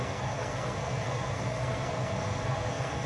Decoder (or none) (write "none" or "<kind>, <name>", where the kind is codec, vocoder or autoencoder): codec, SNAC